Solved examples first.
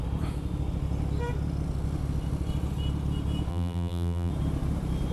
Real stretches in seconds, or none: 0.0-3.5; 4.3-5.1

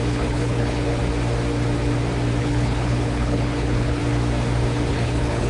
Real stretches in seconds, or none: 1.0-2.4; 4.0-4.9